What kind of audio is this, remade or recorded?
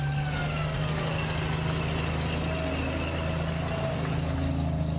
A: recorded